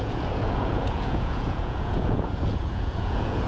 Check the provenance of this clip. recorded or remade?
remade